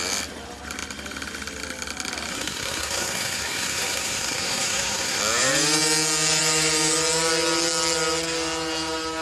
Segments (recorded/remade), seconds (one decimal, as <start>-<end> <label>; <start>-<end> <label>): 0.0-2.3 recorded; 2.3-5.2 remade; 5.2-9.2 recorded